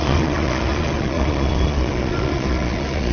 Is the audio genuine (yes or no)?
no